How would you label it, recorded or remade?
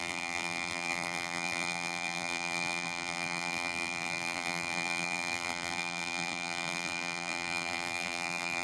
remade